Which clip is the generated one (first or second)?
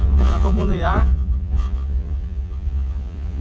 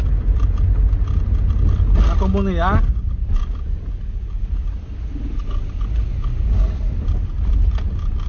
first